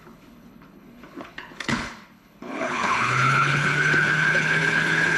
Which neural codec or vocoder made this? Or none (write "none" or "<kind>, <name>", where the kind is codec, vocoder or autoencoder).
codec, HILCodec